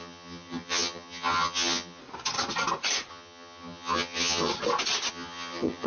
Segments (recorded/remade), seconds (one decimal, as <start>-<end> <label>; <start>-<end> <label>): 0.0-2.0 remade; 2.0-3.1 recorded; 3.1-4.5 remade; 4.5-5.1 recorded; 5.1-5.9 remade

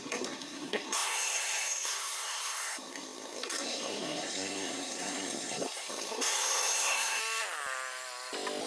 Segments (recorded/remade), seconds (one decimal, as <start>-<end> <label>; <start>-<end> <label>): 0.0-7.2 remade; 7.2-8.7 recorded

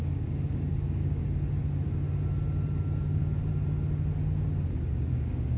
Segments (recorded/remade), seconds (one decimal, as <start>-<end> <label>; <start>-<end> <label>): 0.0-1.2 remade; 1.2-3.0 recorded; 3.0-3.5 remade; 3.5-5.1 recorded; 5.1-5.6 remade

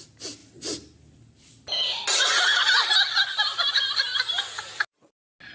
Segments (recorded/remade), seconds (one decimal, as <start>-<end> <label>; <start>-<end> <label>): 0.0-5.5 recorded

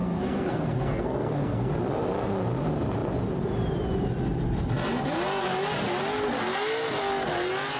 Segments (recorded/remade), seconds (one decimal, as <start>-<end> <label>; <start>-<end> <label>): 0.0-1.7 remade; 1.7-7.8 recorded

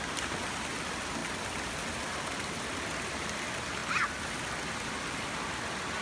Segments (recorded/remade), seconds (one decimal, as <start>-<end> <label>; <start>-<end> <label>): 0.0-1.2 remade; 1.2-3.1 recorded; 3.1-3.8 remade; 3.8-6.0 recorded